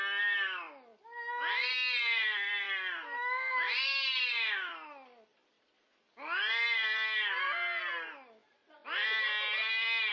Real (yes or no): yes